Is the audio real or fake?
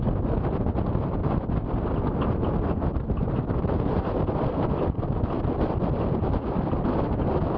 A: real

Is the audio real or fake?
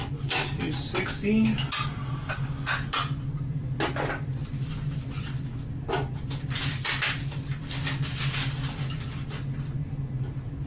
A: real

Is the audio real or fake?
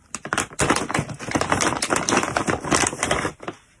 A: real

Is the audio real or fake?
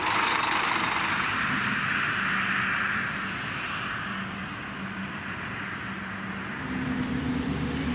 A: real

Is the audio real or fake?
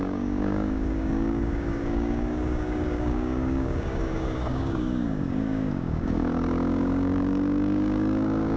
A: fake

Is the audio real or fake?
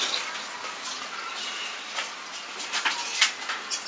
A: real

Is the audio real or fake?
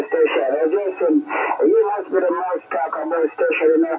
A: real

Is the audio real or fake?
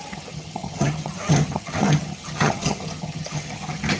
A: fake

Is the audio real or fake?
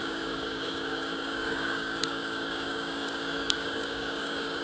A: fake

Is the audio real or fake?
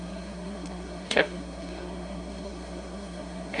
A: fake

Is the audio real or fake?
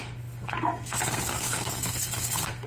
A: fake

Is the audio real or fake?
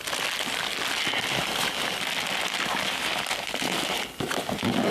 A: real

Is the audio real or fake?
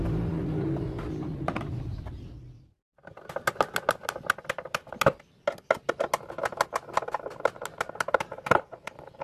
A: real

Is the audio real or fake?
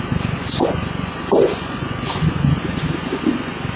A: fake